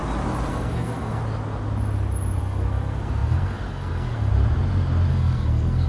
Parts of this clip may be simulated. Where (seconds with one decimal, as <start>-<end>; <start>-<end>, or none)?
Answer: 0.5-1.2; 2.4-4.3; 5.1-5.9